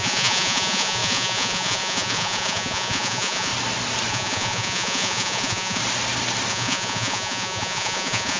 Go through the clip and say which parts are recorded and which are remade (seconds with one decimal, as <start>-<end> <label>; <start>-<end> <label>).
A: 0.0-3.5 remade; 3.5-4.1 recorded; 4.1-5.8 remade; 5.8-6.5 recorded; 6.5-8.4 remade